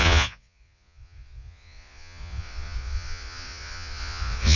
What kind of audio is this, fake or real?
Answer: fake